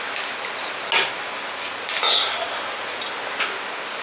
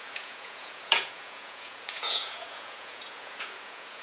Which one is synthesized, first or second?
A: second